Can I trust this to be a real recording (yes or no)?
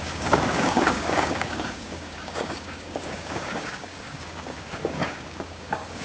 no